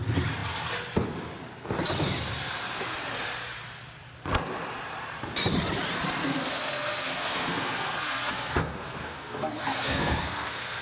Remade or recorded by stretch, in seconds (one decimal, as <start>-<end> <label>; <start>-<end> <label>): 0.0-6.2 recorded; 6.2-10.8 remade